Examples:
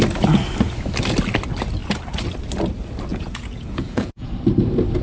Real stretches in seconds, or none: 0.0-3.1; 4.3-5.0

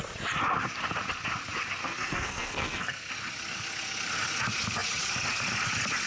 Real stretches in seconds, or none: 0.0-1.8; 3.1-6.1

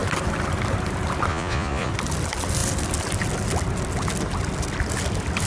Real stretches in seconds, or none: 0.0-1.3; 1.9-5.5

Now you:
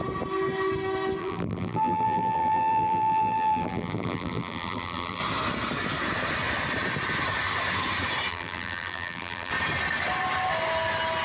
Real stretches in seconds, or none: 0.0-1.2; 5.2-8.3; 9.5-11.2